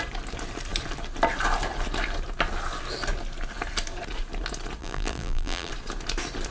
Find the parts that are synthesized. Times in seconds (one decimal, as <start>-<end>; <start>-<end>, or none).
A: 4.8-5.7